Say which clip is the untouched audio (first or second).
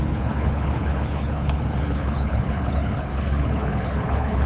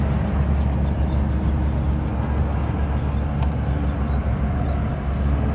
second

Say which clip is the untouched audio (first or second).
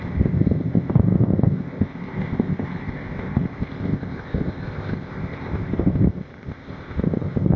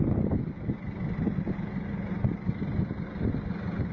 second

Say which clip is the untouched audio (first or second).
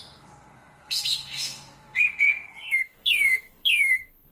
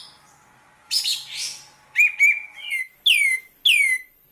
second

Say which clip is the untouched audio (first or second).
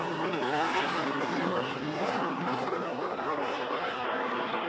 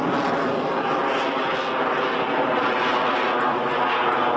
second